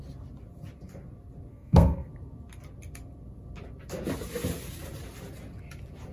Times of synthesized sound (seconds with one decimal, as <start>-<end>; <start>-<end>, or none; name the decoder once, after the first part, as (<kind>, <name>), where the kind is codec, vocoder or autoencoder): 1.5-2.1 (codec, SNAC)